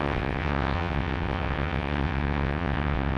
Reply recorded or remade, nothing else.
remade